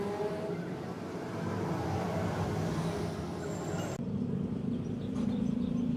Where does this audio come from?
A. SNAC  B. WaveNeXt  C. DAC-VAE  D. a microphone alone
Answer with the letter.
D